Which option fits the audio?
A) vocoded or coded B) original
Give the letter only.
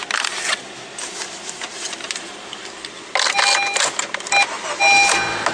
B